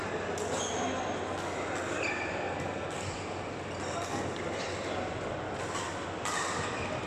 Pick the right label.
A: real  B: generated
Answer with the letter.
A